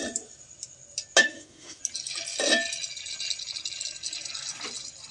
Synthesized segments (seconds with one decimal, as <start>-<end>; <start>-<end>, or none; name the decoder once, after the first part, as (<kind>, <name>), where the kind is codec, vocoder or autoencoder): 1.2-1.8 (autoencoder, DAC-VAE)